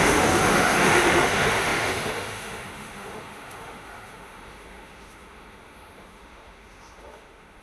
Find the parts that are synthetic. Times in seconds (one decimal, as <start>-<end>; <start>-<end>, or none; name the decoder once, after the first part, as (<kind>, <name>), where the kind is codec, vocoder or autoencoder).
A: 0.0-7.6 (autoencoder, DAC-VAE)